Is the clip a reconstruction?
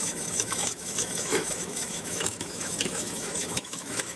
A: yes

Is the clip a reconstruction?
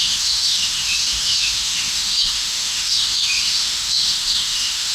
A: yes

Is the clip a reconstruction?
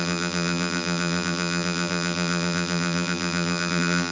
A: yes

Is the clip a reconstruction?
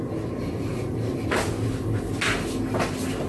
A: no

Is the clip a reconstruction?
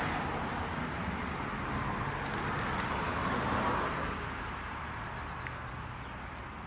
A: no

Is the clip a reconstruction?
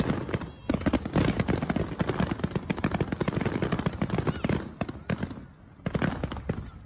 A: no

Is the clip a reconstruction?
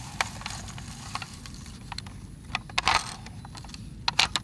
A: no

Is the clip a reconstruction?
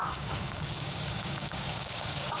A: yes